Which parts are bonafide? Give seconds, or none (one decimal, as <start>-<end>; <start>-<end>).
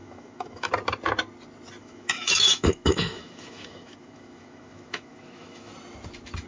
0.7-1.8; 5.7-6.5